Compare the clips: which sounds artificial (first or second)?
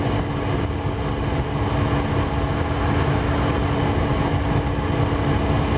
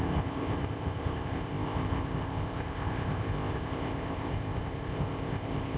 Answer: second